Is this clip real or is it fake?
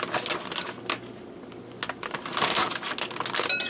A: real